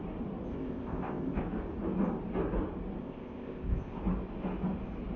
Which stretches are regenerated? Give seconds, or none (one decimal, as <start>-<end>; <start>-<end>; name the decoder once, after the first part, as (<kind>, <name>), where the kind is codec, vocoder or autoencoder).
0.5-1.4 (codec, ZipCodec); 3.0-4.0